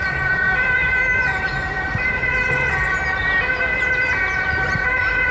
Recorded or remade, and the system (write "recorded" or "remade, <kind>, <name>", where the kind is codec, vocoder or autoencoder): recorded